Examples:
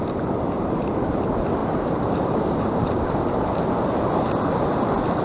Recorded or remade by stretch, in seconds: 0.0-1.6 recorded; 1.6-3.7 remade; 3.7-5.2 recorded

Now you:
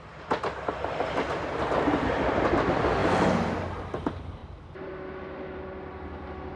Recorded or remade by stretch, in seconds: 0.0-1.5 recorded; 1.5-2.4 remade; 2.4-4.4 recorded; 4.4-4.9 remade; 4.9-6.6 recorded

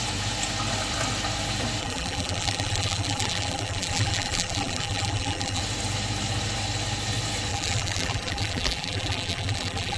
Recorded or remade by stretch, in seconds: 0.0-1.8 recorded; 1.8-5.6 remade; 5.6-7.5 recorded; 7.5-10.0 remade

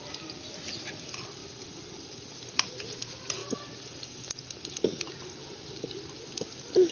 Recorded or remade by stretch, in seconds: 0.0-1.4 recorded; 1.4-2.4 remade; 2.4-3.4 recorded; 3.4-4.7 remade; 4.7-6.9 recorded

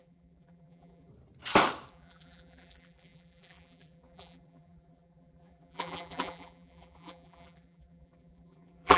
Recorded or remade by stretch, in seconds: 0.0-1.1 remade; 1.1-1.9 recorded; 1.9-9.0 remade

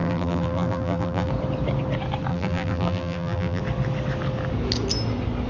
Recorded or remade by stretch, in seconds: 0.0-1.3 remade; 1.3-2.3 recorded; 2.3-3.6 remade; 3.6-5.5 recorded

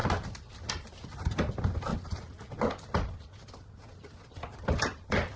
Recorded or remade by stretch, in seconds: 0.0-5.4 recorded